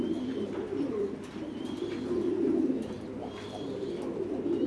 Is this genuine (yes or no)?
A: no